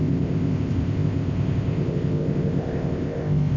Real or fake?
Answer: fake